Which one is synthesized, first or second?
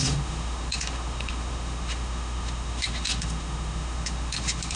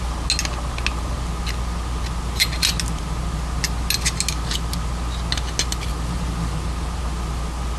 first